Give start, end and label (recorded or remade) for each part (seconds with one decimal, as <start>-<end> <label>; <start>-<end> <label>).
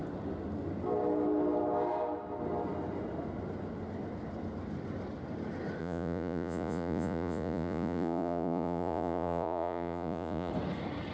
0.0-5.8 recorded; 5.8-10.5 remade; 10.5-11.1 recorded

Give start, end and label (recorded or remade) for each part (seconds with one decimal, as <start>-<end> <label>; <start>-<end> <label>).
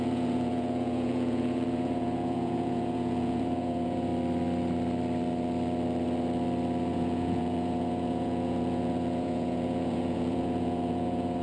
0.0-4.1 remade; 4.1-6.9 recorded; 6.9-11.4 remade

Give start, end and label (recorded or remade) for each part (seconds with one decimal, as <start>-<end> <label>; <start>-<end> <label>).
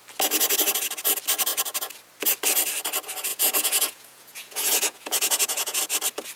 0.0-3.3 recorded; 3.3-5.8 remade; 5.8-6.4 recorded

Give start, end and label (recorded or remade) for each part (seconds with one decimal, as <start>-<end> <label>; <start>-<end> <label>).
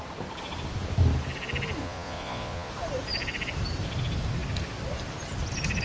0.0-1.8 recorded; 1.8-2.7 remade; 2.7-5.8 recorded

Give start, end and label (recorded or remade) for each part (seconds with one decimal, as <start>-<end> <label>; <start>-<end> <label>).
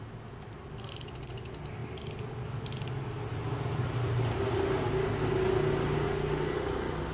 0.0-7.1 recorded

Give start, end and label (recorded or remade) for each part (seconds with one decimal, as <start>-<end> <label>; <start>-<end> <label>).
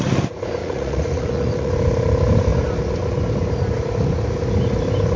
0.0-0.6 recorded; 0.6-1.7 remade; 1.7-5.2 recorded